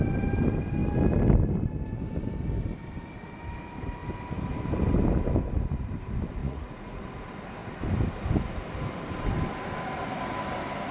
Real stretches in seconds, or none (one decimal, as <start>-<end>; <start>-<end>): 0.0-6.4; 7.0-10.9